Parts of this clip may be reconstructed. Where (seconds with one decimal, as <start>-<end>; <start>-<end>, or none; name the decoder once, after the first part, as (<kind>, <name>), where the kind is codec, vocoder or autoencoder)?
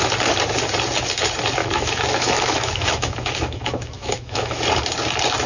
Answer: 1.6-4.6 (autoencoder, DAC-VAE)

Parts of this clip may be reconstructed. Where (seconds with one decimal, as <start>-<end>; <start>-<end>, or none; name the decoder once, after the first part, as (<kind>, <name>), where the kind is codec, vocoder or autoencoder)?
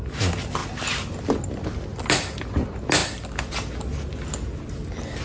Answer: 3.0-3.5 (vocoder, BigVGAN v2)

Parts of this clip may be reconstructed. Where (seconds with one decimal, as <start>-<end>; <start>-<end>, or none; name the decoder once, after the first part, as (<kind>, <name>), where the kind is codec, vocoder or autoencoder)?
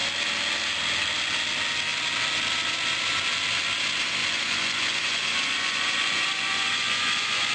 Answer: 4.2-7.5 (vocoder, Vocos)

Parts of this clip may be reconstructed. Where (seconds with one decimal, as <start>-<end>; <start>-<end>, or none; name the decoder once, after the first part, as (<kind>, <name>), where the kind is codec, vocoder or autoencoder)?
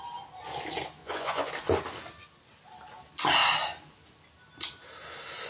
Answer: 1.0-1.5 (vocoder, Vocos)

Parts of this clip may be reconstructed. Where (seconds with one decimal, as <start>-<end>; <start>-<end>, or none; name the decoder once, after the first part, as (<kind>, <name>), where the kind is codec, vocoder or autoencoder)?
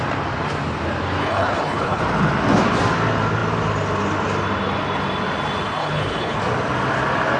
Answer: 1.2-2.0 (codec, HILCodec); 5.8-6.4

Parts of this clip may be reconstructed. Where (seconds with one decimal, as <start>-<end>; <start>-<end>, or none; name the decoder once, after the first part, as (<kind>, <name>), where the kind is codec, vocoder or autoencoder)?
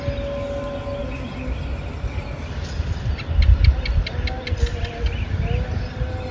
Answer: none